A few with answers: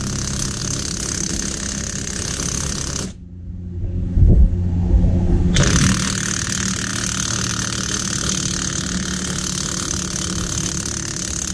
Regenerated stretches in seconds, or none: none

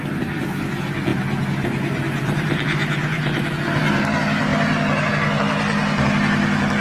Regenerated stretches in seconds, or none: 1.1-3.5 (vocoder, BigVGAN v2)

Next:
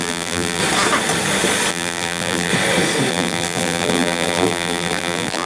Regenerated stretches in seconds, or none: 0.0-0.6 (vocoder, BigVGAN v2); 1.7-2.5; 3.1-5.5

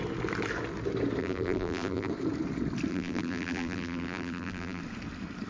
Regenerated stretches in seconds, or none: 1.2-2.1 (vocoder, BigVGAN v2); 2.9-4.8

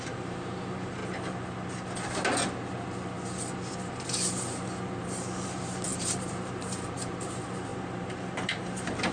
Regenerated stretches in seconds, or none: 0.0-1.0 (vocoder, BigVGAN v2); 5.0-9.1

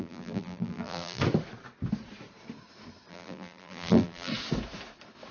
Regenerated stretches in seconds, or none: 0.0-1.2 (vocoder, BigVGAN v2); 3.1-4.3